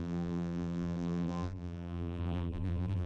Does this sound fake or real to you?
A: fake